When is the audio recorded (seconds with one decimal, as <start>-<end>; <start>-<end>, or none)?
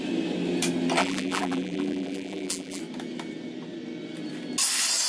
0.0-1.0; 2.8-5.1